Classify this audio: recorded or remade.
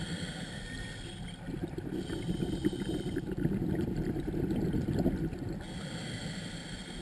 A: recorded